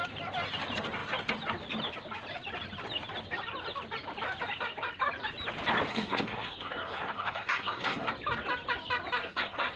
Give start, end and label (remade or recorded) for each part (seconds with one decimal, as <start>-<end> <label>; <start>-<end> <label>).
0.0-5.9 recorded; 5.9-8.1 remade; 8.1-9.2 recorded; 9.2-9.8 remade